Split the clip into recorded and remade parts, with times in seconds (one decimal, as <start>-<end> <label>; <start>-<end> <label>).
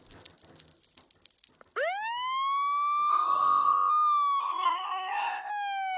0.0-3.1 recorded; 3.1-3.9 remade; 3.9-4.4 recorded; 4.4-5.5 remade; 5.5-6.0 recorded